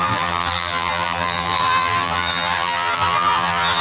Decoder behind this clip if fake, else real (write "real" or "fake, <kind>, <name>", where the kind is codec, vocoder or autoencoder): fake, vocoder, BigVGAN v2